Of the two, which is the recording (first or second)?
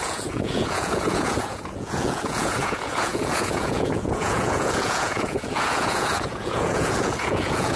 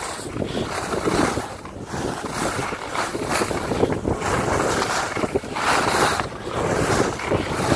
second